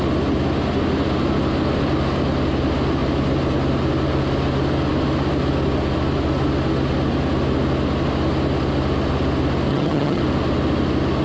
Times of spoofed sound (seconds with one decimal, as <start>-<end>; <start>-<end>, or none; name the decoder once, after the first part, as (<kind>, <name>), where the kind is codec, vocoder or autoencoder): 9.7-10.2 (vocoder, HiFi-GAN)